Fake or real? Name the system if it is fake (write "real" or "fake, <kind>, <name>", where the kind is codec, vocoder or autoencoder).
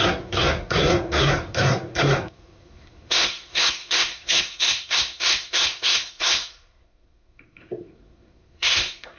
fake, codec, SNAC